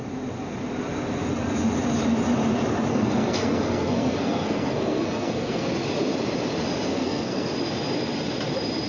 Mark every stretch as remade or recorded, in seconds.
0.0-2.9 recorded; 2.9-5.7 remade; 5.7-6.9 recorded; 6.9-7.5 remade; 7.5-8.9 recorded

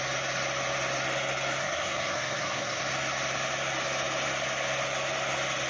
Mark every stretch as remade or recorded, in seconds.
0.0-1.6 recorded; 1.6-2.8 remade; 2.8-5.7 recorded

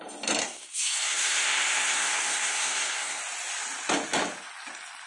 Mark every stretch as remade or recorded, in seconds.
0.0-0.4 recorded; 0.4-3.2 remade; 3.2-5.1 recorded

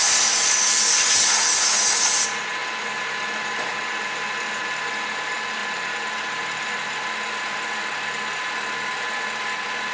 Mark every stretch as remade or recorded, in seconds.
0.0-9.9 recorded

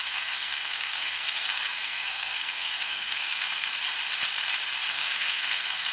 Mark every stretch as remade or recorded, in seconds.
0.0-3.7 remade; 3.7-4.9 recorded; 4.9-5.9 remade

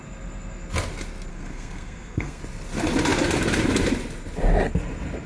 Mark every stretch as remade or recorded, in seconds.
0.0-1.3 recorded; 1.3-2.4 remade; 2.4-5.3 recorded

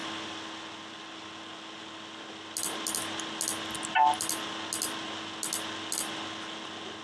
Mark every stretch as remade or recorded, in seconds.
0.0-7.0 recorded